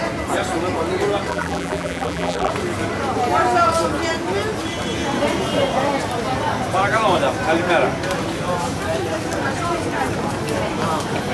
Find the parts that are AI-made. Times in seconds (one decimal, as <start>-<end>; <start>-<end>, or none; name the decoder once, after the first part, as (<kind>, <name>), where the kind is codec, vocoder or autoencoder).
1.3-2.5 (vocoder, BigVGAN v2)